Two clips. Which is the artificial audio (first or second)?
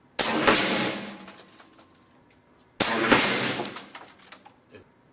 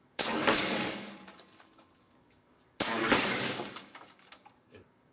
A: second